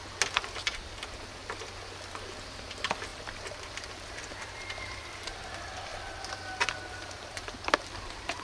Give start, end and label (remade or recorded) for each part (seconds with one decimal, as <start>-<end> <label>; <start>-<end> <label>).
0.0-1.4 remade; 1.4-2.3 recorded; 2.3-5.9 remade; 5.9-7.2 recorded; 7.2-8.4 remade